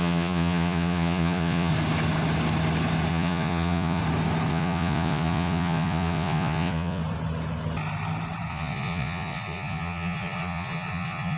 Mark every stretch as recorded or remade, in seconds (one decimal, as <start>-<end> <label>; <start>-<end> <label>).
0.0-1.7 remade; 1.7-3.1 recorded; 3.1-4.0 remade; 4.0-4.5 recorded; 4.5-7.0 remade; 7.0-8.5 recorded; 8.5-11.4 remade